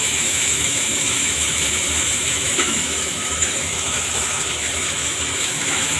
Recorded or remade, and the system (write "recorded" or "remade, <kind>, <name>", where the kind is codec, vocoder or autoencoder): remade, autoencoder, DAC-VAE